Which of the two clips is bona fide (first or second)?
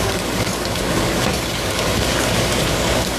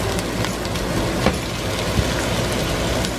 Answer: second